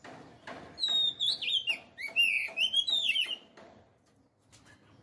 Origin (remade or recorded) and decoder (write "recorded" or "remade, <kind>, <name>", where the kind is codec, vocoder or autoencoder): recorded